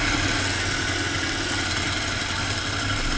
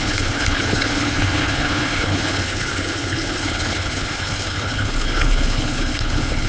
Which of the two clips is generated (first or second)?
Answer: second